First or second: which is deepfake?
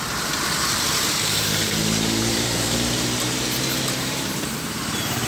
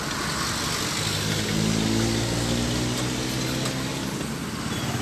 first